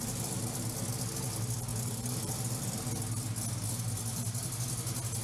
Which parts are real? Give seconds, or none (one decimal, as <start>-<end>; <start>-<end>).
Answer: 0.0-1.7; 2.3-5.2